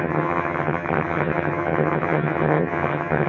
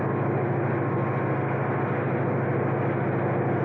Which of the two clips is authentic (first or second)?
second